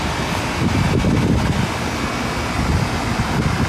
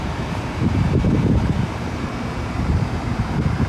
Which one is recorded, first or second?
first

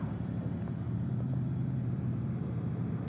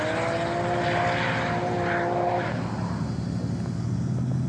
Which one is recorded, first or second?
second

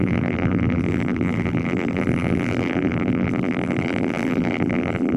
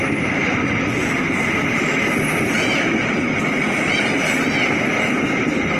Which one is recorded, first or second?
second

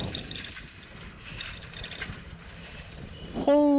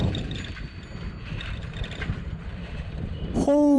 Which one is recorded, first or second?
first